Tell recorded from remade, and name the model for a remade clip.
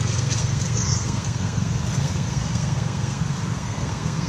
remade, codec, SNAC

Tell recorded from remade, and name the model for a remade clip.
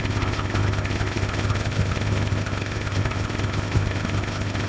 remade, codec, ZipCodec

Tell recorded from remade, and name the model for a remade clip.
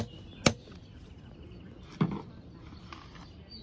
recorded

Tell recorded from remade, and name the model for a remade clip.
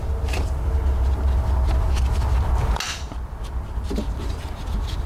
recorded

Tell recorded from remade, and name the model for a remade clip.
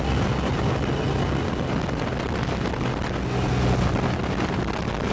recorded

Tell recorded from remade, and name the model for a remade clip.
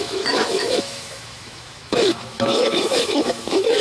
remade, autoencoder, DAC-VAE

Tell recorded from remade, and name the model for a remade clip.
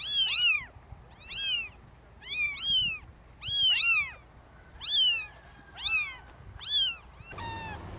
recorded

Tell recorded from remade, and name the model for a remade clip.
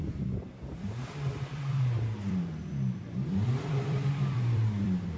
remade, vocoder, BigVGAN v2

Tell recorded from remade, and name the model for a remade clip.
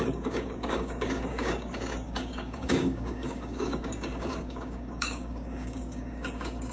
remade, codec, DAC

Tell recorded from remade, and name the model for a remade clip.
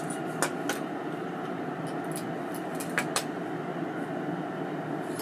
recorded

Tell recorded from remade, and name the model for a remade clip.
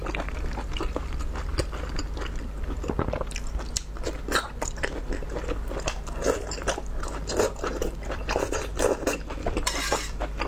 remade, vocoder, BigVGAN v2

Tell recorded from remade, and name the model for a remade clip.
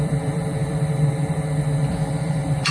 remade, vocoder, BigVGAN v2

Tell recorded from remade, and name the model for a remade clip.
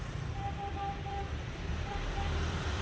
remade, vocoder, BigVGAN v2